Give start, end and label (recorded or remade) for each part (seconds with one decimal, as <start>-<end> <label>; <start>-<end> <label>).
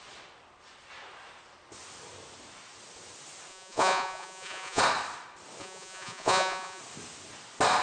0.0-3.5 recorded; 3.5-4.8 remade; 4.8-5.6 recorded; 5.6-6.8 remade; 6.8-7.8 recorded